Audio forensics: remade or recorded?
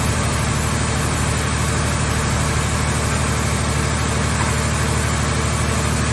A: recorded